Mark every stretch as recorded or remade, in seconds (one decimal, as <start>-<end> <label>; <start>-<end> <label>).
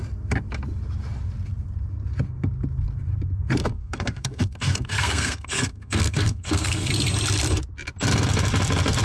0.0-3.6 recorded; 3.6-6.9 remade; 6.9-9.0 recorded